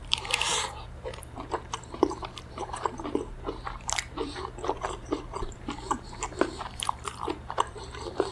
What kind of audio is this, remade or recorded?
remade